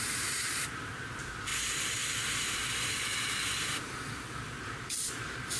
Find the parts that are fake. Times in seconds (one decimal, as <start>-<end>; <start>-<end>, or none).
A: 0.0-1.5; 4.9-5.6